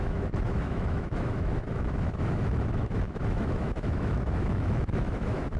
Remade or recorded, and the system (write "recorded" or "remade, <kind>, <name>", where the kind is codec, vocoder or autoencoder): remade, autoencoder, DAC-VAE